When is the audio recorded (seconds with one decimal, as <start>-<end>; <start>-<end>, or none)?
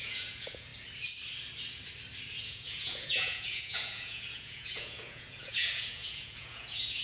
0.7-2.4